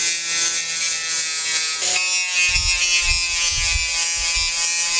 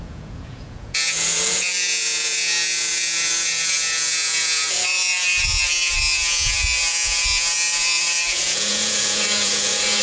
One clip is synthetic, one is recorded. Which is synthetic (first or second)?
second